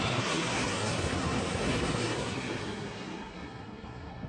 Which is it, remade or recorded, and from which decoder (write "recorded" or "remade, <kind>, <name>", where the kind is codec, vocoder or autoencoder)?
remade, codec, SNAC